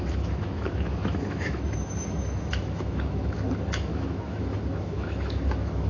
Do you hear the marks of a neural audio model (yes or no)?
yes